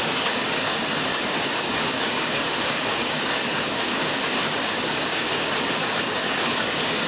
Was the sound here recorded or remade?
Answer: remade